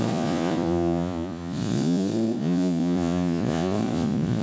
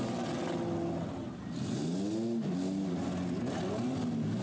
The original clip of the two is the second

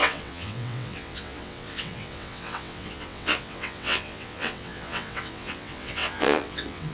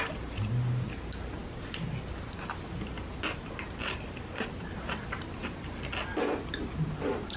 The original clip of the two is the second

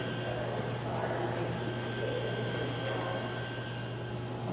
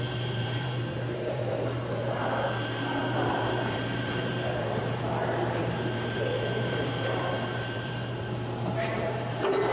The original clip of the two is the first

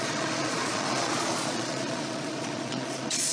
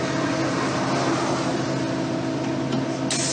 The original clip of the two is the second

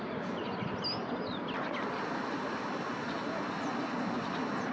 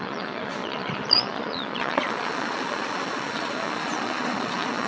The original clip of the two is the first